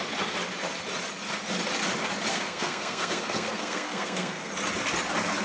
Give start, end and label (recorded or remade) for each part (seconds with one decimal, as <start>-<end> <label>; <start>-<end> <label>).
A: 0.0-2.3 recorded; 2.3-4.5 remade; 4.5-5.4 recorded